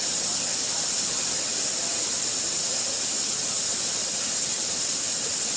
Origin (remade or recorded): remade